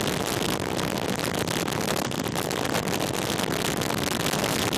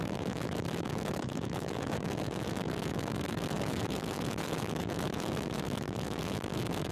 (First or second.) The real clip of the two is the first